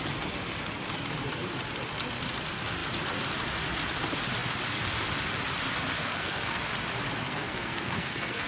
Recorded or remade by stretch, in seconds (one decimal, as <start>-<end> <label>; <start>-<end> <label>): 0.0-6.0 recorded; 6.0-6.6 remade; 6.6-7.2 recorded; 7.2-8.5 remade

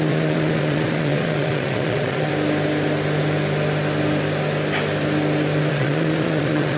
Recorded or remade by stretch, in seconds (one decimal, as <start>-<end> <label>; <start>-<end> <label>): 0.0-2.3 remade; 2.3-5.7 recorded; 5.7-6.8 remade

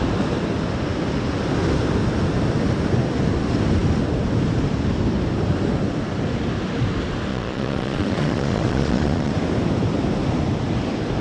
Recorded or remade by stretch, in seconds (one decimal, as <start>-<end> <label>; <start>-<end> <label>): 0.0-7.3 recorded; 7.3-9.3 remade; 9.3-11.2 recorded

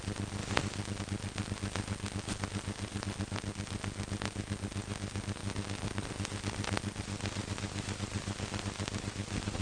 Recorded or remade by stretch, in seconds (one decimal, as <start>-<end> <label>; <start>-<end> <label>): 0.0-9.6 recorded

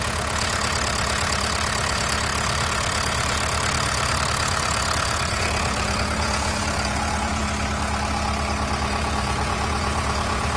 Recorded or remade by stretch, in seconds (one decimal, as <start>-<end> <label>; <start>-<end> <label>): 0.0-7.4 remade; 7.4-8.9 recorded; 8.9-10.6 remade

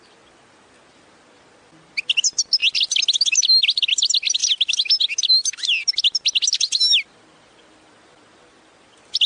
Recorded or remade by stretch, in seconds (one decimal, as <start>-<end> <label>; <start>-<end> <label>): 0.0-9.3 recorded

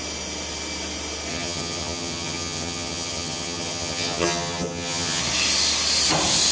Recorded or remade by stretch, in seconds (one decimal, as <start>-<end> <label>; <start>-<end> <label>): 0.0-1.3 recorded; 1.3-5.2 remade; 5.2-6.5 recorded

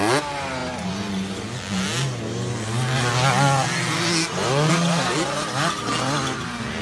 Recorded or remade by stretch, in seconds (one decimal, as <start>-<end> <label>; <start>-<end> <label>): 0.0-6.8 recorded